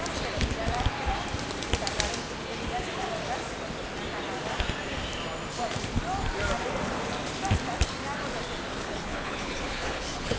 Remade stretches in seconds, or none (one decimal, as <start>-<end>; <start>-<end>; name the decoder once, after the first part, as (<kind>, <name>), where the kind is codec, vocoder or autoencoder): 8.7-10.4 (codec, HILCodec)